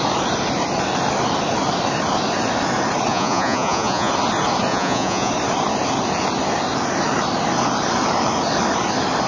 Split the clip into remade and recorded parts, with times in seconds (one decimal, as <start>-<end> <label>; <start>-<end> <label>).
0.0-3.1 recorded; 3.1-4.1 remade; 4.1-4.7 recorded; 4.7-5.3 remade; 5.3-9.3 recorded

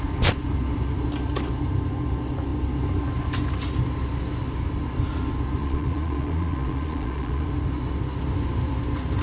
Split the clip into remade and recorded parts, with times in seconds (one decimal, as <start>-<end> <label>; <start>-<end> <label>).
0.0-5.6 recorded; 5.6-7.5 remade; 7.5-9.2 recorded

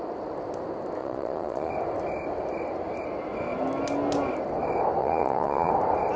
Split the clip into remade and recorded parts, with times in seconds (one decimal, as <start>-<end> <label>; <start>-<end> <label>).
0.0-1.0 recorded; 1.0-1.7 remade; 1.7-5.0 recorded; 5.0-5.7 remade; 5.7-6.2 recorded

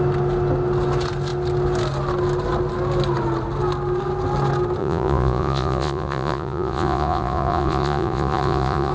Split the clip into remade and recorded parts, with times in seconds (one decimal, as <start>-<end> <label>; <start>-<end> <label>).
0.0-4.8 recorded; 4.8-8.9 remade

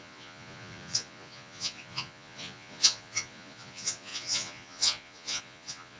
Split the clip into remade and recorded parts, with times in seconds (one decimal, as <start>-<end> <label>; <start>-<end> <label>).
0.0-6.0 remade

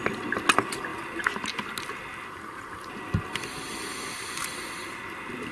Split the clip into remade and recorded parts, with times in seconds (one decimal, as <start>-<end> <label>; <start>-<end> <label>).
0.0-5.5 recorded